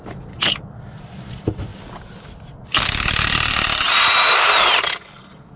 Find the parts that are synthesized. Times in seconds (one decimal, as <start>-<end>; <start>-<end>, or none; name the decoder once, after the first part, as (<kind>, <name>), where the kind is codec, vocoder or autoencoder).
none